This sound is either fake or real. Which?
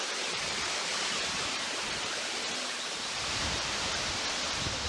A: fake